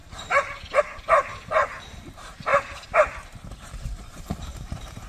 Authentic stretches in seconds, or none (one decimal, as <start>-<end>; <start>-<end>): 2.5-3.6